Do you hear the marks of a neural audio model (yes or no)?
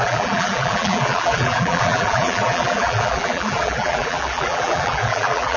yes